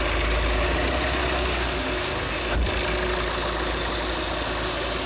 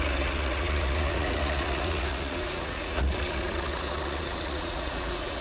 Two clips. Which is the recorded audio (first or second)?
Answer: first